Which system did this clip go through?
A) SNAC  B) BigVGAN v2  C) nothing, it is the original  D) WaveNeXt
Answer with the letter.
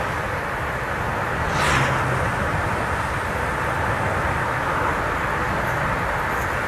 C